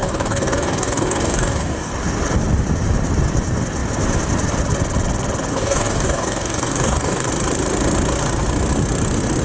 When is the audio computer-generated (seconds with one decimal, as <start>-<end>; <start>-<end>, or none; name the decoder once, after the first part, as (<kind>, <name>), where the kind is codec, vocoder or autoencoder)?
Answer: 0.0-1.9 (codec, DAC); 5.5-7.3